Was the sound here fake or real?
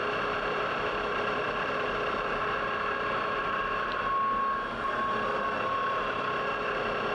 real